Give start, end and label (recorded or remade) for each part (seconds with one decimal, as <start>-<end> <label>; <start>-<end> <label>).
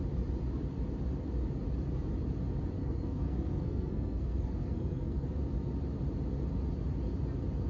0.0-2.8 recorded; 2.8-5.4 remade; 5.4-7.7 recorded